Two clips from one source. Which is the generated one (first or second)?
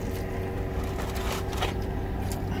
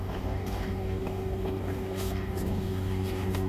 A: second